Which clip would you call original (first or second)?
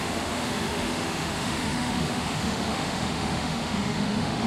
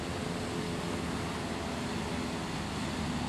second